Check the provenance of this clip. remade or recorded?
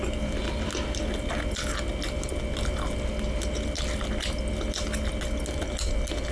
recorded